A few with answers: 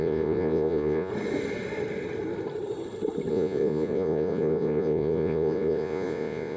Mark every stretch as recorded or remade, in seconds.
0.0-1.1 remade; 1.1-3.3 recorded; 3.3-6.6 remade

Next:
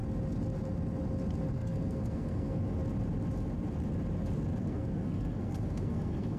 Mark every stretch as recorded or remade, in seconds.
0.0-1.5 recorded; 1.5-2.6 remade; 2.6-4.6 recorded; 4.6-6.4 remade

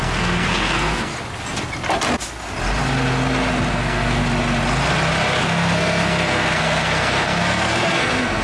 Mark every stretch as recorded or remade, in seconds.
0.0-1.1 remade; 1.1-3.7 recorded; 3.7-4.2 remade; 4.2-5.4 recorded; 5.4-8.4 remade

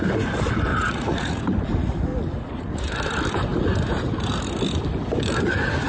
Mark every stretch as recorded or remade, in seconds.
0.0-0.7 recorded; 0.7-1.4 remade; 1.4-5.9 recorded

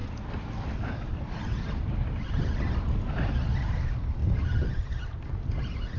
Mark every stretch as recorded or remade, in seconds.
0.0-6.0 recorded

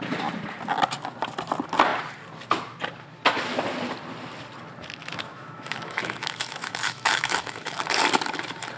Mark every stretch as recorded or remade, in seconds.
0.0-5.0 recorded; 5.0-7.8 remade; 7.8-8.8 recorded

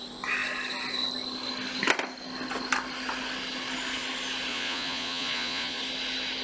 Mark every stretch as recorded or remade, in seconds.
0.0-4.5 recorded; 4.5-5.8 remade; 5.8-6.4 recorded

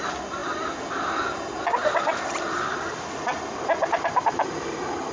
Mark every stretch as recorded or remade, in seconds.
0.0-1.8 recorded; 1.8-5.1 remade